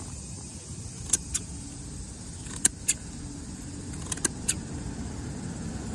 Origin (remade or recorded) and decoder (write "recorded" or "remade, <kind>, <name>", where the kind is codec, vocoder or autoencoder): recorded